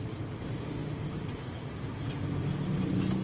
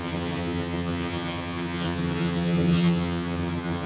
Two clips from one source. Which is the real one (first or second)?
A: first